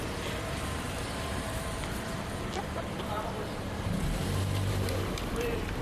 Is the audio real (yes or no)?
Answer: no